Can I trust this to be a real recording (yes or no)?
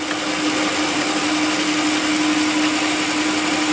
yes